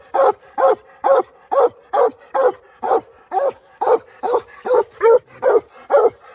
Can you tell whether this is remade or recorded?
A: recorded